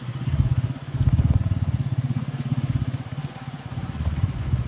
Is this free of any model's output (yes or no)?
no